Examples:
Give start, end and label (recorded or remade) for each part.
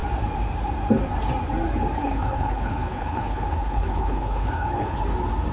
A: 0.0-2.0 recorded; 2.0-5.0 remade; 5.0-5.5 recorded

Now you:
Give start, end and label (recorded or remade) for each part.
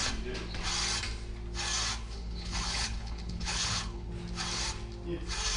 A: 0.0-2.0 recorded; 2.0-4.1 remade; 4.1-5.6 recorded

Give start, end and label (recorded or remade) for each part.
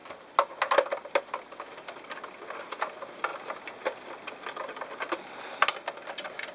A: 0.0-6.5 recorded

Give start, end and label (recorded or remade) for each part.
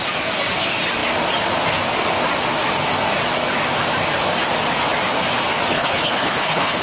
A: 0.0-5.7 recorded; 5.7-6.8 remade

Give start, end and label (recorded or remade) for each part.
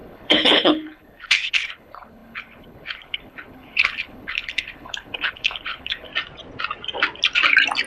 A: 0.0-6.1 remade; 6.1-7.9 recorded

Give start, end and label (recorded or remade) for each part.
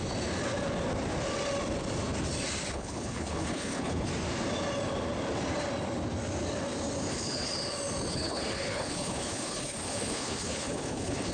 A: 0.0-2.7 recorded; 2.7-4.1 remade; 4.1-7.1 recorded; 7.1-7.5 remade; 7.5-8.1 recorded; 8.1-11.3 remade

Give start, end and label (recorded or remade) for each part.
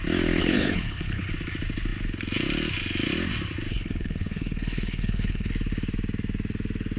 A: 0.0-0.4 recorded; 0.4-1.3 remade; 1.3-3.7 recorded; 3.7-5.5 remade; 5.5-7.0 recorded